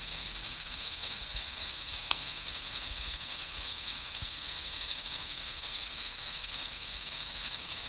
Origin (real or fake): fake